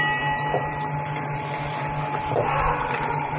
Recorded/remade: recorded